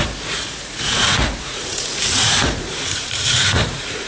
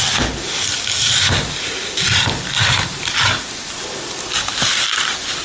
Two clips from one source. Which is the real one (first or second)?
second